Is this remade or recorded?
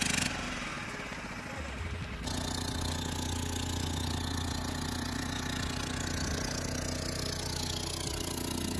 recorded